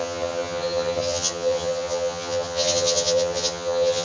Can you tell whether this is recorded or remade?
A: remade